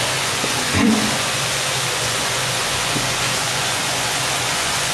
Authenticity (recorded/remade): remade